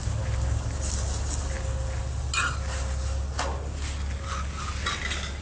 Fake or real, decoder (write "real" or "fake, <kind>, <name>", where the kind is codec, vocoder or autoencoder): real